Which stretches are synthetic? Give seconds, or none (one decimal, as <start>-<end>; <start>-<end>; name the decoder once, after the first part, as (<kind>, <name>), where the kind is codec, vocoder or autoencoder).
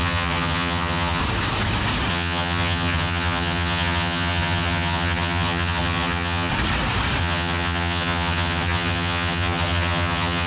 0.0-1.2 (vocoder, HiFi-GAN); 2.1-6.5; 7.2-10.5